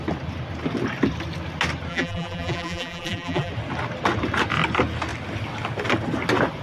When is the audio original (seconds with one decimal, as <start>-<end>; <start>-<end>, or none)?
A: 0.0-1.9; 3.5-6.6